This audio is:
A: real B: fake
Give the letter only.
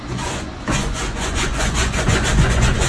B